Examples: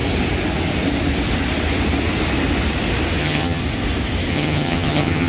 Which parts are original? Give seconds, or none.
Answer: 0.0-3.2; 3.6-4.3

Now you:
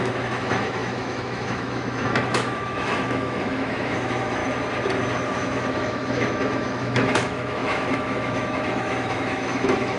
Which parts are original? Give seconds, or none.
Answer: 4.4-5.4

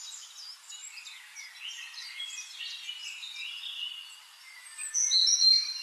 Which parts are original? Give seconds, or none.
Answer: 0.0-5.8

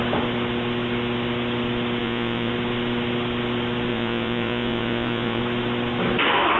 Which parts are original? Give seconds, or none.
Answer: 0.0-2.0; 2.5-3.9; 5.4-6.6

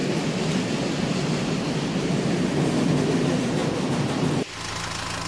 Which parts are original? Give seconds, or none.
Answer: 0.0-5.3

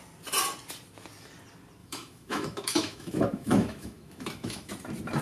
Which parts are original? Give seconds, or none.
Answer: 0.0-1.8; 4.7-5.2

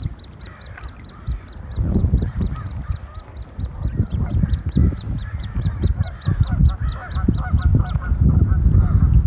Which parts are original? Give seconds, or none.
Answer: 0.0-4.8; 6.1-7.7; 8.4-9.3